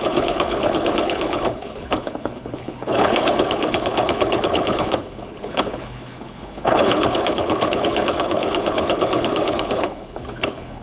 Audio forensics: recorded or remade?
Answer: remade